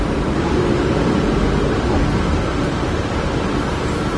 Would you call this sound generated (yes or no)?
yes